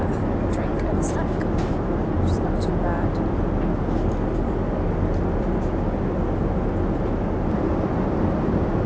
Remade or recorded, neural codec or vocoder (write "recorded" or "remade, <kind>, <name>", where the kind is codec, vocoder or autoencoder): recorded